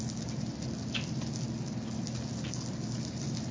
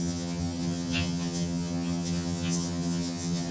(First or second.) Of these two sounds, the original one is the first